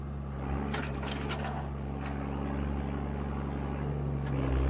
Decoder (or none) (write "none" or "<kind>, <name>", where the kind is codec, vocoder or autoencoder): none